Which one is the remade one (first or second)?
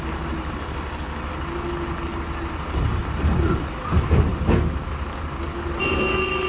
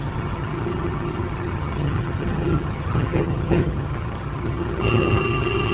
second